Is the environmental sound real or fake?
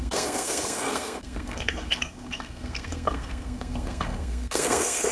fake